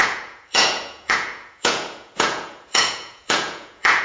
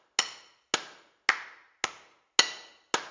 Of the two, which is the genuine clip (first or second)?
second